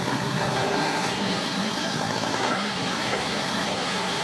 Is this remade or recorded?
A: remade